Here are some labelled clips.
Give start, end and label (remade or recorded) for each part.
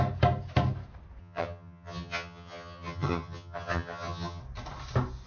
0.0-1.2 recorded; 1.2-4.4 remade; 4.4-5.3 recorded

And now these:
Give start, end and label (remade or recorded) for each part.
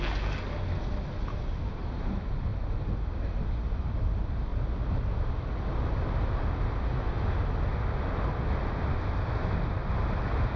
0.0-10.6 recorded